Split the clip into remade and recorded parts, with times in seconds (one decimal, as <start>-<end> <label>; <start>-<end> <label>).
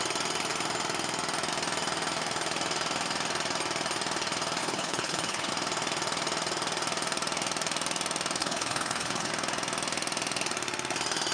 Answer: 0.0-4.6 recorded; 4.6-5.5 remade; 5.5-8.4 recorded; 8.4-9.3 remade; 9.3-11.3 recorded